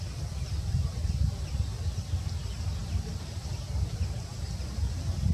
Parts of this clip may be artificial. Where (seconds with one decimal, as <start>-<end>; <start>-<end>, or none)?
none